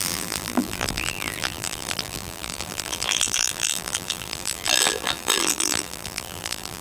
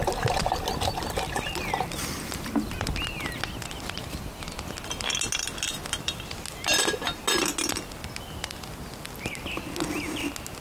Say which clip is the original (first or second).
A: second